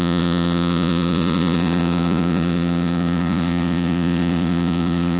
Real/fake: fake